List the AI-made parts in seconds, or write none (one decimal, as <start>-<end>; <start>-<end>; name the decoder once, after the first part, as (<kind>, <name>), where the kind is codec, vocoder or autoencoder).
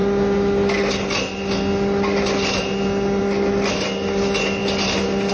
none